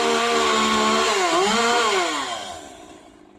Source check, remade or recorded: recorded